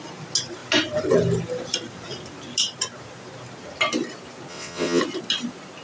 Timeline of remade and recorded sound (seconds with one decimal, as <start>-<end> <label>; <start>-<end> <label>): 0.0-4.5 recorded; 4.5-5.0 remade; 5.0-5.8 recorded